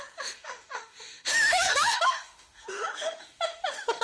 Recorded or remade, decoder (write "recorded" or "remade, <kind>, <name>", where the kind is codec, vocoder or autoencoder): remade, autoencoder, DAC-VAE